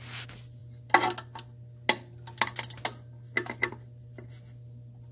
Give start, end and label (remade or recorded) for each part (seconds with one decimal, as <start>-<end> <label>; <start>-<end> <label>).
0.0-5.1 recorded